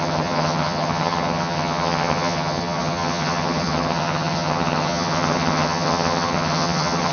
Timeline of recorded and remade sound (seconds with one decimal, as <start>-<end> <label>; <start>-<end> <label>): 0.0-7.1 remade